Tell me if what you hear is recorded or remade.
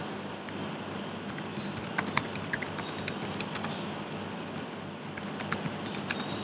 recorded